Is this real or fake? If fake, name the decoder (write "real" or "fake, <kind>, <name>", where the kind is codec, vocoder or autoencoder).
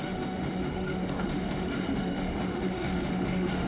fake, autoencoder, DAC-VAE